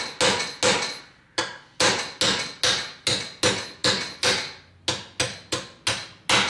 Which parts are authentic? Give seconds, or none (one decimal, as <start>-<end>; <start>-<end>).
0.0-6.5